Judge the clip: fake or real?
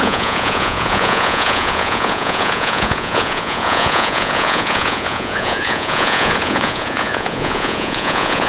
fake